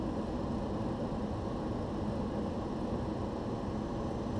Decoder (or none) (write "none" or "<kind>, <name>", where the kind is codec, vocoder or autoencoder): none